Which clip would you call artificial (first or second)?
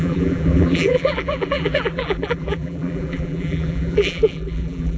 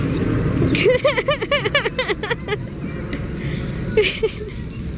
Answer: first